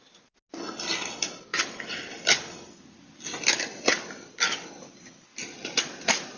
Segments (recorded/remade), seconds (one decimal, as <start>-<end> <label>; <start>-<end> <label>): 0.0-6.4 recorded